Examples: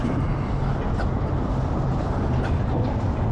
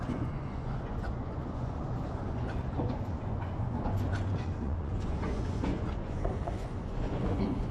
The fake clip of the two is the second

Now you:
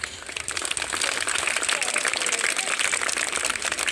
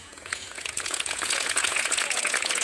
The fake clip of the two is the second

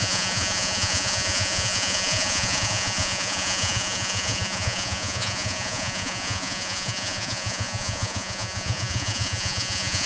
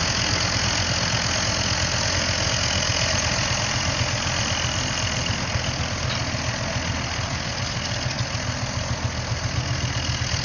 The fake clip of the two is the first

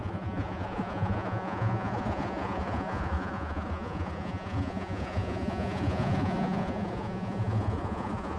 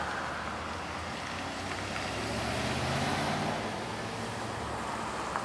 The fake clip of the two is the first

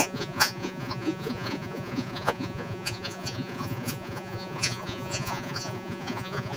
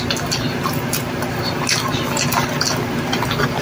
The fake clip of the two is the first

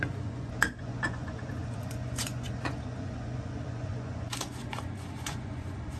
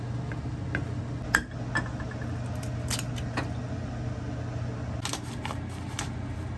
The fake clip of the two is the first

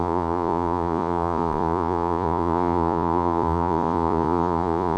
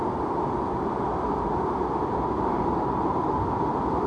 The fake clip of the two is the first